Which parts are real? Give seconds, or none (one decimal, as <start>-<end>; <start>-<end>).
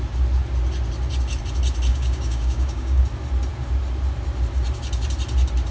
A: 0.0-1.9; 3.0-5.7